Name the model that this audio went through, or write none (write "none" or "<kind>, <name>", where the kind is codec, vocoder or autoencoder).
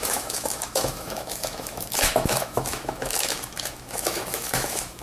autoencoder, DAC-VAE